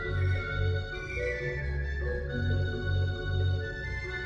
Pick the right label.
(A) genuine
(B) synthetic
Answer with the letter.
A